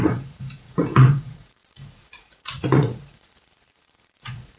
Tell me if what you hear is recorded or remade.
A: remade